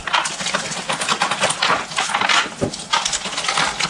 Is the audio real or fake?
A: real